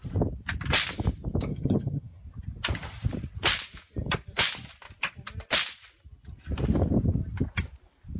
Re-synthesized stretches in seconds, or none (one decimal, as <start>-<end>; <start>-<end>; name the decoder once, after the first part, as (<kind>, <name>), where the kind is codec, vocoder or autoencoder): 1.5-2.2 (vocoder, HiFi-GAN)

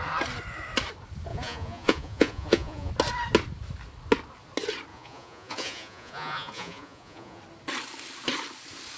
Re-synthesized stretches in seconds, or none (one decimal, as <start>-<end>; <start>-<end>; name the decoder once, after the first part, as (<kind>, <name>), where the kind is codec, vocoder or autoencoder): 1.3-2.9 (vocoder, Vocos); 4.9-7.4